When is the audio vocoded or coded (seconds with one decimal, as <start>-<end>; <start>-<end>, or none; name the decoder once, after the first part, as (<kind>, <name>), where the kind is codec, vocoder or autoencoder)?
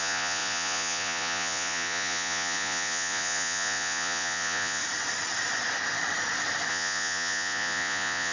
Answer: 0.0-4.8 (vocoder, Vocos); 6.7-8.3